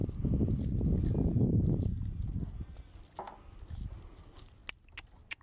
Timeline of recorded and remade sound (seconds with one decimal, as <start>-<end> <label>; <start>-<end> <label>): 0.0-5.4 recorded